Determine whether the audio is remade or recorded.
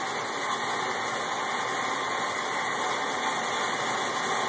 recorded